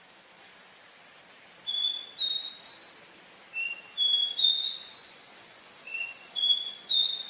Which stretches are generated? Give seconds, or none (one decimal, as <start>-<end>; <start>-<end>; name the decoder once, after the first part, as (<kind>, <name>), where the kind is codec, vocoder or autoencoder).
0.0-0.5 (vocoder, Vocos); 4.3-7.3